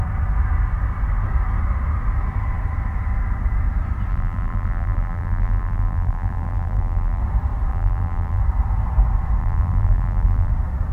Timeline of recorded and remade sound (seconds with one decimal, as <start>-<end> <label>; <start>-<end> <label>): 0.0-4.1 recorded; 4.1-7.2 remade; 7.2-7.7 recorded; 7.7-8.4 remade; 8.4-9.4 recorded; 9.4-10.5 remade; 10.5-10.9 recorded